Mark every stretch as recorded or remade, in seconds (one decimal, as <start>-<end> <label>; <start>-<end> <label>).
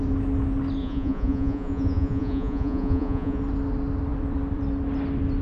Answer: 0.0-0.8 recorded; 0.8-3.4 remade; 3.4-5.4 recorded